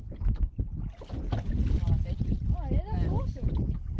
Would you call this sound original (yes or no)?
yes